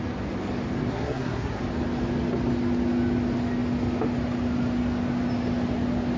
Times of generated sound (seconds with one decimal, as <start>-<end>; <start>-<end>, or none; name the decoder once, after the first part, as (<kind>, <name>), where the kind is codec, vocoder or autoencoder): 0.9-1.6 (codec, SNAC)